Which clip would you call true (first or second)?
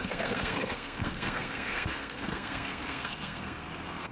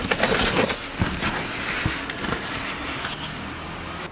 second